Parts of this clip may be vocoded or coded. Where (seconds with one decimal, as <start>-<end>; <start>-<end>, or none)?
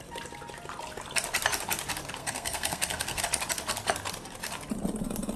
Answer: 2.2-3.2